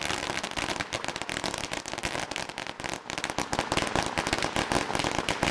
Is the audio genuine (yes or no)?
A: yes